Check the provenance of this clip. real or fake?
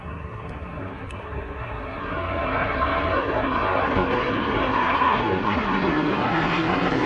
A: fake